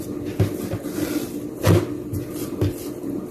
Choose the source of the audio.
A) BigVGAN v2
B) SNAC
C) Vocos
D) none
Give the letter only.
D